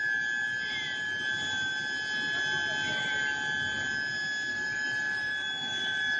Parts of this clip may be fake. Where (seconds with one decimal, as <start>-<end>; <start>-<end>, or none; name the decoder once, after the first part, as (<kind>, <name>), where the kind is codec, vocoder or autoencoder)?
4.5-6.2 (autoencoder, DAC-VAE)